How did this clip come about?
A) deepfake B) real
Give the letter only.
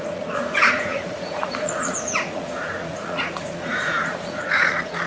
A